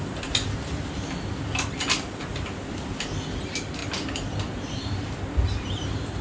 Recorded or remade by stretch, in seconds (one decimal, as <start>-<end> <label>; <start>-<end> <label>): 0.0-6.2 recorded